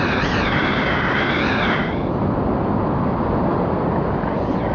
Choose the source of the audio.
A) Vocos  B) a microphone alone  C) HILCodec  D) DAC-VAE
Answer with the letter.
B